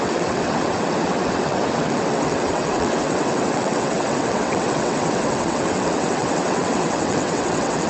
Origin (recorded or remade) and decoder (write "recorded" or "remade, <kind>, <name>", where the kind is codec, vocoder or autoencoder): remade, vocoder, WaveNeXt